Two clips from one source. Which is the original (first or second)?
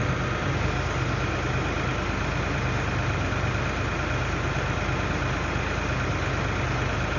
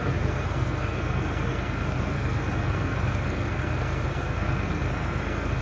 first